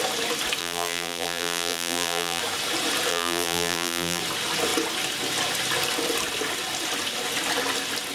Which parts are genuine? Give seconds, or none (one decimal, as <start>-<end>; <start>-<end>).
0.0-0.6; 2.4-3.1; 4.2-8.1